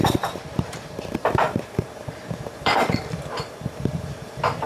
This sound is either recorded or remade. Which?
remade